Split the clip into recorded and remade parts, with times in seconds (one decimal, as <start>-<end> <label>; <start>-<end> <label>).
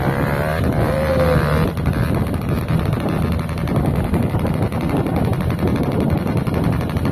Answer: 0.0-0.5 remade; 0.5-4.3 recorded; 4.3-7.1 remade